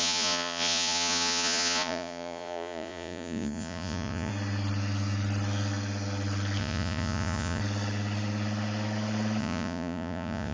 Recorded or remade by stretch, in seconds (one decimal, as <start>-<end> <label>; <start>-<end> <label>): 0.0-4.3 remade; 4.3-6.6 recorded; 6.6-7.6 remade; 7.6-9.4 recorded; 9.4-10.5 remade